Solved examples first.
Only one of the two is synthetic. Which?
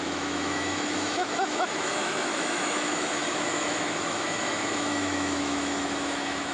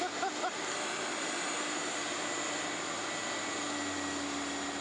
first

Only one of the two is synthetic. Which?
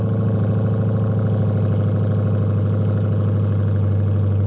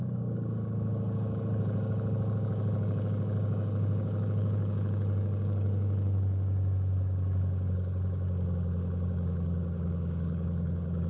second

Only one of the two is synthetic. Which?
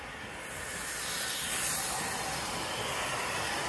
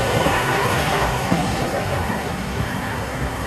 second